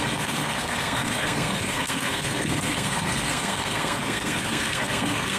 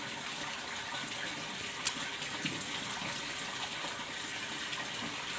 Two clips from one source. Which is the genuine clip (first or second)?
second